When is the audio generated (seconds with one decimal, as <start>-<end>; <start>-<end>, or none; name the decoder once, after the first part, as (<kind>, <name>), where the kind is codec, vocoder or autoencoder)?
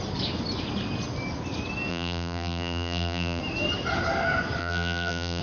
1.9-3.4 (vocoder, BigVGAN v2); 4.6-5.4